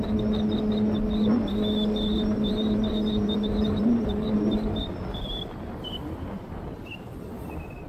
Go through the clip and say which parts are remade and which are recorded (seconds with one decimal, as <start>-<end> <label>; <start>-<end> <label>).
0.0-2.1 recorded; 2.1-4.8 remade; 4.8-7.9 recorded